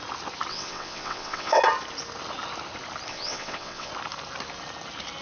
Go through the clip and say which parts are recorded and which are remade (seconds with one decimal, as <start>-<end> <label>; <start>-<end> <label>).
0.0-0.5 recorded; 0.5-1.6 remade; 1.6-3.1 recorded; 3.1-3.9 remade; 3.9-5.2 recorded